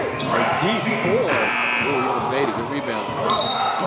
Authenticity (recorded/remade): recorded